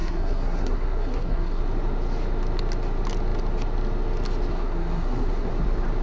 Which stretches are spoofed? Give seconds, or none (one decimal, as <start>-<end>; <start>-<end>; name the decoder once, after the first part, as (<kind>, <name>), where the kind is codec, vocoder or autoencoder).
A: 0.0-1.6 (codec, SNAC); 4.5-5.5